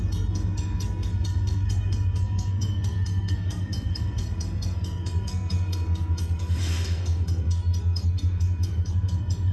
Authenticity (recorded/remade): remade